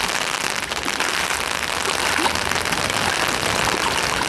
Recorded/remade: recorded